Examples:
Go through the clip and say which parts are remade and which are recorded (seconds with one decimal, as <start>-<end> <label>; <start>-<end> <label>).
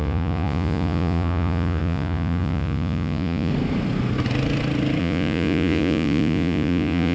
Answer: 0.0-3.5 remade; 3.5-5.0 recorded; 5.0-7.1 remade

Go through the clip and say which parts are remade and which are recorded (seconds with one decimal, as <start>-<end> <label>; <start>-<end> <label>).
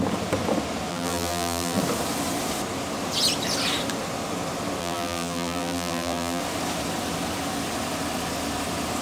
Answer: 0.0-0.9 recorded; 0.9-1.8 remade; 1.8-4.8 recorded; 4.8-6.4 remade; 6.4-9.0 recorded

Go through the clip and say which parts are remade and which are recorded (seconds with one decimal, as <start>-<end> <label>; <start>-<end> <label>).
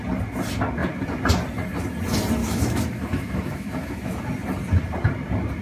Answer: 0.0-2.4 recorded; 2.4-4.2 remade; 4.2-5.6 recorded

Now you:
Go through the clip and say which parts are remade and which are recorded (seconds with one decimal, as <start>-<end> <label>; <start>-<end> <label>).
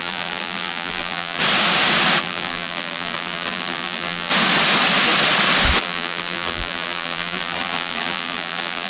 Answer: 0.0-1.4 remade; 1.4-2.2 recorded; 2.2-4.3 remade; 4.3-5.8 recorded; 5.8-8.9 remade